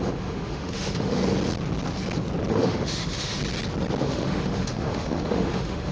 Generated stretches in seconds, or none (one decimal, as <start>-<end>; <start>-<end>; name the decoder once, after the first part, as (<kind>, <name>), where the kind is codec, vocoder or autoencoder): 0.0-1.2 (autoencoder, DAC-VAE); 2.5-3.4; 4.0-5.9

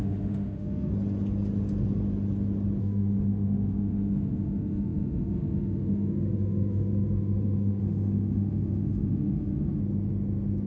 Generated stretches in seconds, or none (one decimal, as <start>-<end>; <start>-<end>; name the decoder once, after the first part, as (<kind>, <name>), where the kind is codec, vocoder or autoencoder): 0.0-0.9 (autoencoder, DAC-VAE); 2.8-9.8

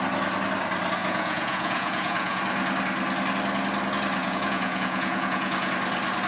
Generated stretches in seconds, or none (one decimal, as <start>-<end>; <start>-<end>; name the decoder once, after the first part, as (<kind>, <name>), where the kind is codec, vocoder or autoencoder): 1.0-2.4 (vocoder, Vocos); 4.2-5.7

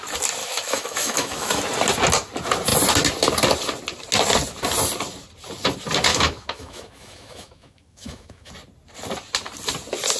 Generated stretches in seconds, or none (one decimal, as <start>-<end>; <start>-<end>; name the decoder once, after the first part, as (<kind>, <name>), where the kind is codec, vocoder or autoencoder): 0.4-1.6 (autoencoder, DAC-VAE); 6.1-8.5

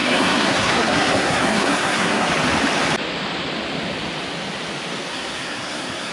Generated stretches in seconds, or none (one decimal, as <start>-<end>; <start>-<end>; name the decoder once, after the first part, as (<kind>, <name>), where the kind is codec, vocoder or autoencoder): 0.0-2.3 (codec, SNAC); 5.1-6.1